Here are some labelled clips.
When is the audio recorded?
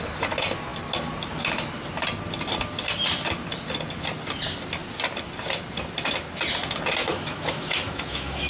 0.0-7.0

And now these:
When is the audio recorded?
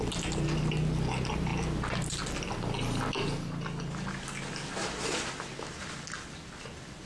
0.0-7.1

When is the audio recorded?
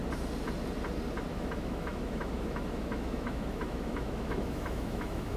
0.0-1.3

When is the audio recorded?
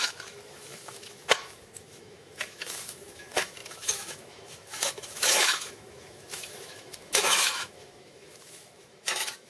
none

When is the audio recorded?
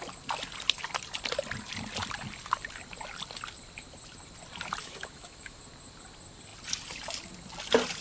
0.0-4.8; 5.6-8.0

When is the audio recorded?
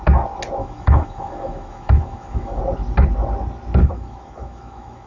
0.0-0.6; 2.6-3.8